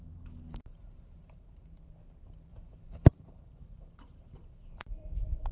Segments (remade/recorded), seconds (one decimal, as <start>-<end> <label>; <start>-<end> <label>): 0.0-1.5 remade; 1.5-2.5 recorded; 2.5-5.5 remade